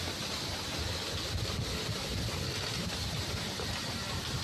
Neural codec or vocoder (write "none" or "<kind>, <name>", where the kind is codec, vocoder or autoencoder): none